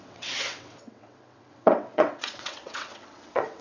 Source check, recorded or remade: remade